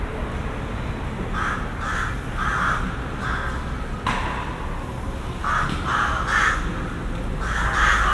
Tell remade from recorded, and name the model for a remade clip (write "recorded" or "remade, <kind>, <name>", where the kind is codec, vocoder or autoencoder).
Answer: recorded